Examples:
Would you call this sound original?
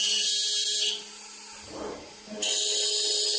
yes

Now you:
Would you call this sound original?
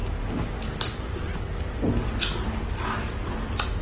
yes